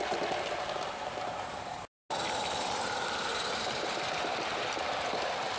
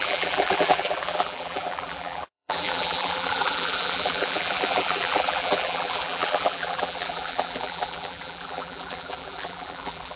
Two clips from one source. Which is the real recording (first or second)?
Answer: first